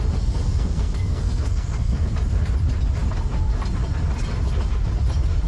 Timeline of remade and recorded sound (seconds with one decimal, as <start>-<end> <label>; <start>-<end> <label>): 0.0-0.5 recorded; 0.5-2.1 remade; 2.1-5.5 recorded

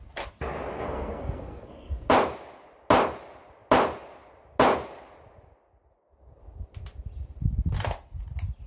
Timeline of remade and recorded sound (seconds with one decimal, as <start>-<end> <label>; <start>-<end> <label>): 0.0-0.8 recorded; 0.8-2.1 remade; 2.1-8.7 recorded

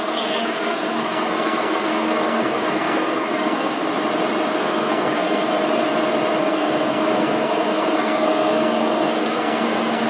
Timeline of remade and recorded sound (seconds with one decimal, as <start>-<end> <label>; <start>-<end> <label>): 0.0-3.8 remade; 3.8-4.6 recorded; 4.6-5.5 remade; 5.5-6.4 recorded; 6.4-10.1 remade

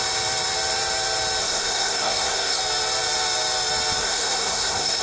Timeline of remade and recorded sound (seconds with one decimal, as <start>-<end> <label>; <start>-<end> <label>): 0.0-1.4 recorded; 1.4-2.6 remade; 2.6-4.0 recorded; 4.0-5.0 remade

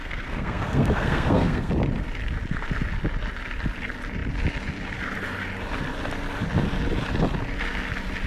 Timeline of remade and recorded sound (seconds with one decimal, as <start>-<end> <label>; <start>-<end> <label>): 0.0-1.7 remade; 1.7-8.3 recorded

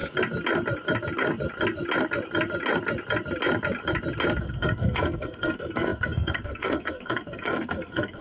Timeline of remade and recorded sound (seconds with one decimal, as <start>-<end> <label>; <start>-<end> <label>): 0.0-4.4 recorded; 4.4-8.2 remade

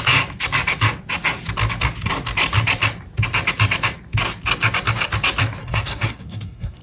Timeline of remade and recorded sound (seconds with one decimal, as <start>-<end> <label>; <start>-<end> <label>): 0.0-5.6 recorded; 5.6-6.8 remade